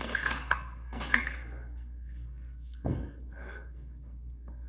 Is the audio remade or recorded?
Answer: remade